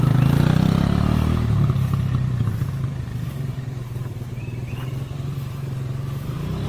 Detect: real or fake fake